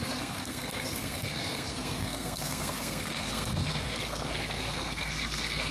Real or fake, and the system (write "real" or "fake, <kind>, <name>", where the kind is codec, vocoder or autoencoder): fake, codec, SNAC